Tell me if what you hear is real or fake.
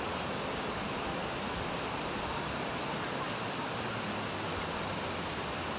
real